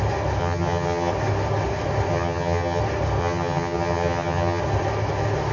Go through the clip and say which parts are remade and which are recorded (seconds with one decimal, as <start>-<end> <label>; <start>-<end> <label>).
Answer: 0.0-0.4 recorded; 0.4-1.1 remade; 1.1-2.1 recorded; 2.1-2.8 remade; 2.8-3.2 recorded; 3.2-4.6 remade; 4.6-5.5 recorded

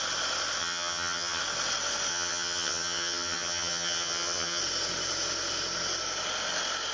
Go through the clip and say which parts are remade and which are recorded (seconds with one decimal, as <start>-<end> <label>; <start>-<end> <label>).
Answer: 0.0-0.6 recorded; 0.6-1.4 remade; 1.4-2.1 recorded; 2.1-4.6 remade; 4.6-6.9 recorded

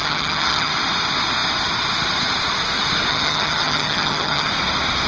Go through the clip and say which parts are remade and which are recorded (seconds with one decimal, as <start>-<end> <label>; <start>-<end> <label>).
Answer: 0.0-0.7 remade; 0.7-3.1 recorded; 3.1-4.5 remade; 4.5-5.1 recorded